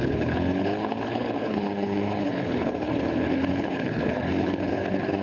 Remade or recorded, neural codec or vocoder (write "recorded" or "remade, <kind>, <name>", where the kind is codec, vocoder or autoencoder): remade, codec, HILCodec